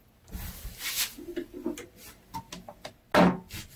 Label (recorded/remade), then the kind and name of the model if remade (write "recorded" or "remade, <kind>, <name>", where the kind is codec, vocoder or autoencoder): recorded